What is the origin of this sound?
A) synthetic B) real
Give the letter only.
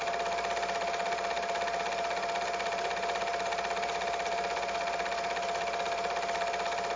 B